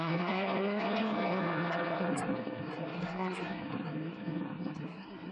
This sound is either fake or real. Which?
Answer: fake